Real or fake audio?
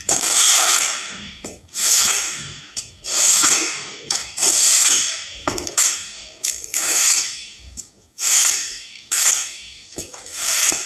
fake